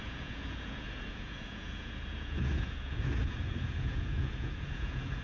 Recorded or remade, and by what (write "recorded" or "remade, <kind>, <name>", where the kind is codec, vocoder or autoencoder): remade, vocoder, Vocos